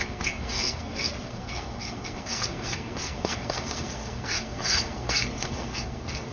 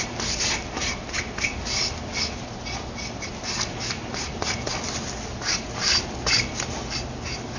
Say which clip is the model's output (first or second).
first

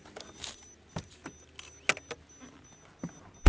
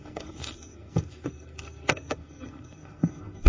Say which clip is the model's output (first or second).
second